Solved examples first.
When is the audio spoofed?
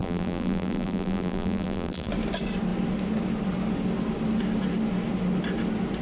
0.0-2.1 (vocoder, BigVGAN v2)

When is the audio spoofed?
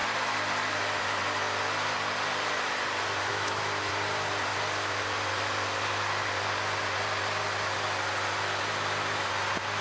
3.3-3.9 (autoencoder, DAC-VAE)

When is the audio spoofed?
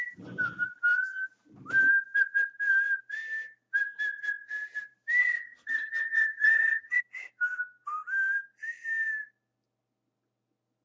5.2-7.0 (vocoder, HiFi-GAN)